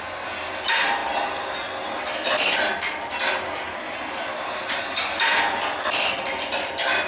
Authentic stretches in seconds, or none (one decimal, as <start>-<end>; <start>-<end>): 0.0-7.1